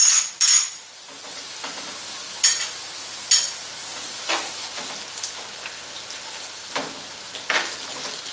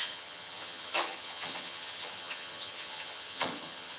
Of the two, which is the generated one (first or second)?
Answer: second